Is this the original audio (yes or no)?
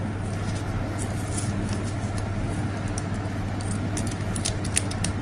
yes